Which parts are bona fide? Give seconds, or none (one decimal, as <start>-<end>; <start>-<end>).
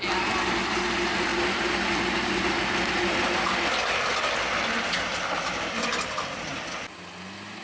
0.0-7.6